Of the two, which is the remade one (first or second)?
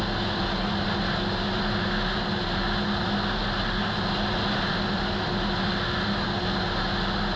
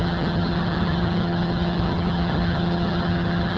second